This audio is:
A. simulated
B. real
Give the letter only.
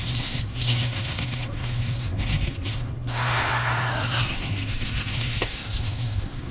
A